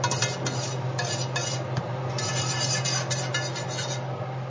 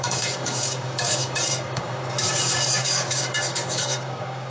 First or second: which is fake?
second